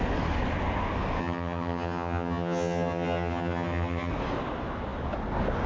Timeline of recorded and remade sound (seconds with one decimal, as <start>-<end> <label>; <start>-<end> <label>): 0.0-1.2 recorded; 1.2-4.1 remade; 4.1-5.7 recorded